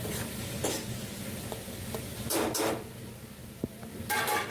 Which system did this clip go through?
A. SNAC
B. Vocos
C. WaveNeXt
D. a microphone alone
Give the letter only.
D